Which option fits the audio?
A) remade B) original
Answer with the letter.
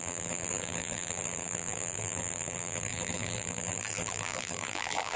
A